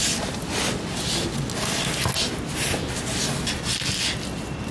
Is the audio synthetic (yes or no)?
no